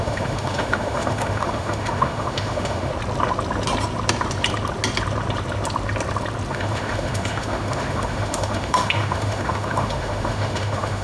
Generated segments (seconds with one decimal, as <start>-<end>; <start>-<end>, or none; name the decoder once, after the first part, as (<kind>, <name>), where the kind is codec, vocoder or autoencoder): 0.0-2.9 (autoencoder, DAC-VAE); 6.5-11.0